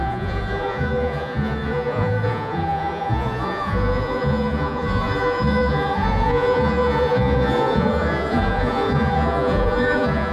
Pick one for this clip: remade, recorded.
remade